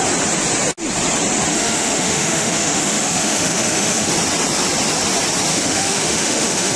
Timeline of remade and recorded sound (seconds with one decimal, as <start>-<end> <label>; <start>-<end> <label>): 0.0-1.5 recorded; 1.5-4.1 remade; 4.1-5.5 recorded; 5.5-6.8 remade